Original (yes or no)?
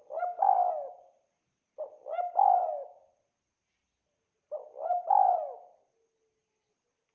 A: yes